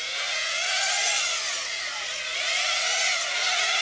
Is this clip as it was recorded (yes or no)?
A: no